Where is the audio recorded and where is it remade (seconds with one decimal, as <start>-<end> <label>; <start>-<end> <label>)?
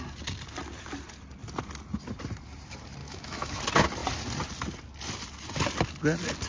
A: 0.0-3.0 recorded; 3.0-3.6 remade; 3.6-6.5 recorded